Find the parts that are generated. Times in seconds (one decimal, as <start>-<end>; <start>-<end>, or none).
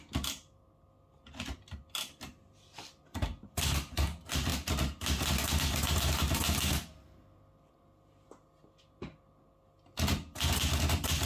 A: none